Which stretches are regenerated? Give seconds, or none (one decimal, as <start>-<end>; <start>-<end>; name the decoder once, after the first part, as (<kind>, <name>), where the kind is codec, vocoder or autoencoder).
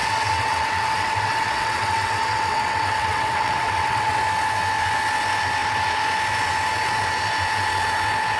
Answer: 0.0-4.2 (vocoder, WaveNeXt)